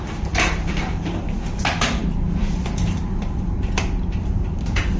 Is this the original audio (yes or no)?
no